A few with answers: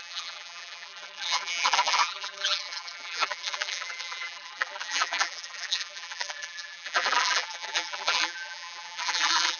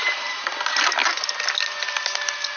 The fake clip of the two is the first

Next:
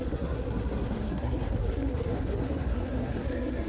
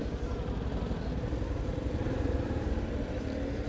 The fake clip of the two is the first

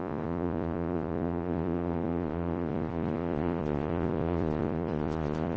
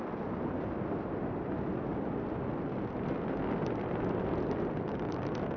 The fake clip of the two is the first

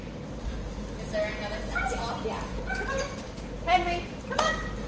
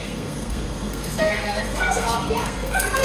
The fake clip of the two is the second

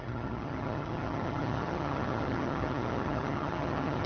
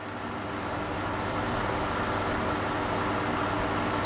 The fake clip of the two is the first